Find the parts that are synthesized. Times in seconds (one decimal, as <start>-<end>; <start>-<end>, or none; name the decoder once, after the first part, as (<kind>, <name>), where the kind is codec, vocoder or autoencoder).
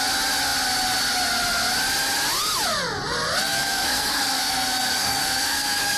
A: 3.4-6.0 (codec, SNAC)